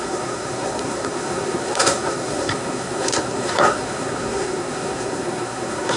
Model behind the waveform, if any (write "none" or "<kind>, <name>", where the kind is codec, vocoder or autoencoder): codec, SNAC